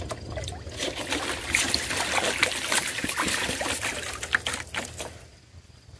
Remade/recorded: recorded